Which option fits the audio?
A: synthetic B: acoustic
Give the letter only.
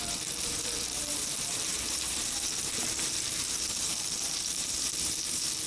A